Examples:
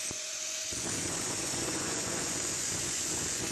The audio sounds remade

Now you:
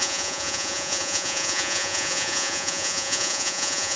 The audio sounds remade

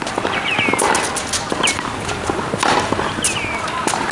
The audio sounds recorded